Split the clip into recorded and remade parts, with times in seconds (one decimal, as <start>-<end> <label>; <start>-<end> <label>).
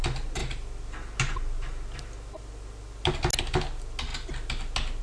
0.0-5.0 recorded